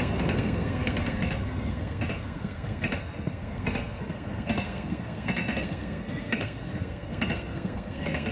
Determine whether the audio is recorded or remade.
remade